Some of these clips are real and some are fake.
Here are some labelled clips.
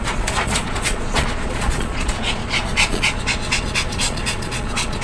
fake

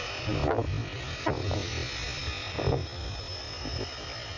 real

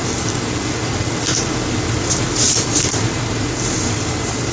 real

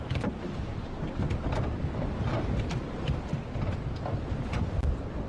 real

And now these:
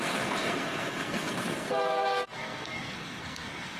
fake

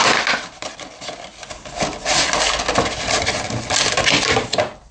real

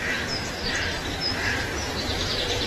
real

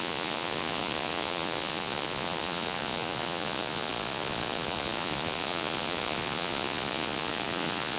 fake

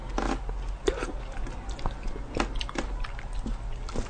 real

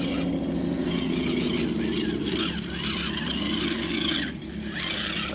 real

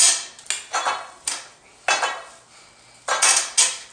real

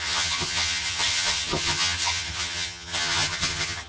fake